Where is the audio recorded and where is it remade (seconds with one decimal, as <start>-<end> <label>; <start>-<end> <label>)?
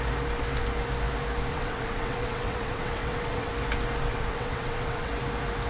0.0-1.5 recorded; 1.5-3.5 remade; 3.5-4.1 recorded; 4.1-5.1 remade; 5.1-5.7 recorded